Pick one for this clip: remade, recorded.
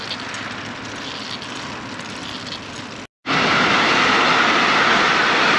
recorded